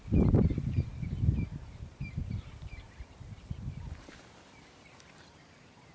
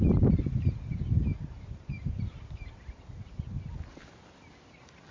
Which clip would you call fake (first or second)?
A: first